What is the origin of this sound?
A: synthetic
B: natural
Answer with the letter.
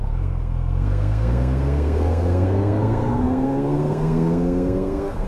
A